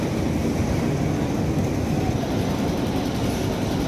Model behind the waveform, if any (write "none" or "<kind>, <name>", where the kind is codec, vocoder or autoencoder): none